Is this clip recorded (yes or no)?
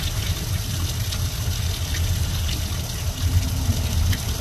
yes